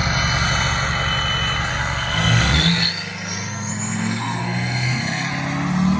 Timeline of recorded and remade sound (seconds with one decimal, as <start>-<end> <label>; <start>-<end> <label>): 0.0-1.7 recorded; 1.7-5.3 remade; 5.3-6.0 recorded